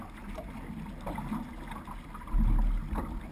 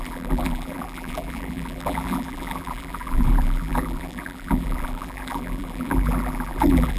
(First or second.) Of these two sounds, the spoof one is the second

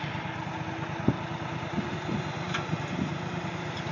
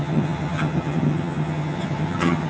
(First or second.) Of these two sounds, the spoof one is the second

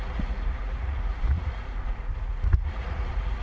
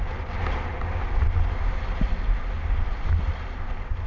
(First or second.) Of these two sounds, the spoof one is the first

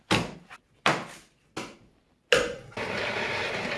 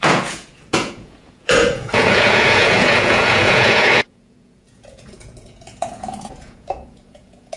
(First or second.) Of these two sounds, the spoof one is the second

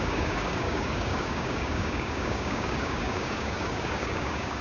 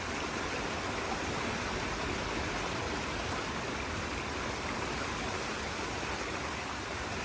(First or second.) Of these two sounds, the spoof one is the first